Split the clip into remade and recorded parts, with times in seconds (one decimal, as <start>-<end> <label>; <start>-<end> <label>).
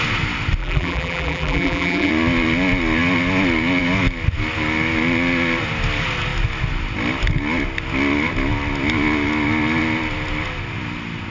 0.0-0.6 recorded; 0.6-2.1 remade; 2.1-11.3 recorded